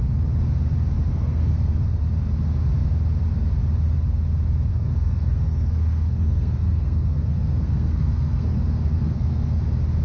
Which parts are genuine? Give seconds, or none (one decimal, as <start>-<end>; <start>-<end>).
0.0-1.1; 2.0-4.7; 9.6-10.0